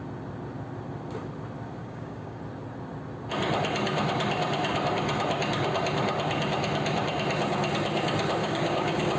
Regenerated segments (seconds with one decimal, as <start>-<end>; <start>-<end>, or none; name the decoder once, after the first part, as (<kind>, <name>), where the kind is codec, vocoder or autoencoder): 1.8-2.4 (codec, DAC); 8.4-9.2